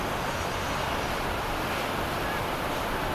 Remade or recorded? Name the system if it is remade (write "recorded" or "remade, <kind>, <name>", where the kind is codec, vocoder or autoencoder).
recorded